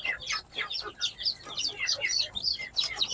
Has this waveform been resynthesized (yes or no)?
no